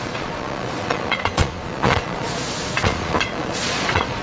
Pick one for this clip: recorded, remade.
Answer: remade